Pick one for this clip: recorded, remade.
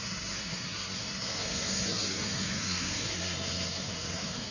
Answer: remade